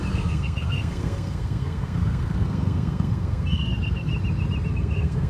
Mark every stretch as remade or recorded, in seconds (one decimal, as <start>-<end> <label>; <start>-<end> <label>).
0.0-4.1 remade; 4.1-4.7 recorded; 4.7-5.3 remade